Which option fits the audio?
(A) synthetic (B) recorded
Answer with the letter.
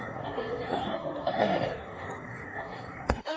A